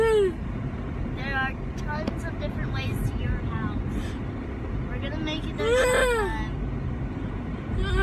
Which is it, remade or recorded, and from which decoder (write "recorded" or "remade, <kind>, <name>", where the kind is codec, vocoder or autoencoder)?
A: recorded